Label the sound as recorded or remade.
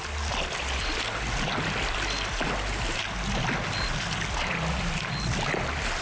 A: recorded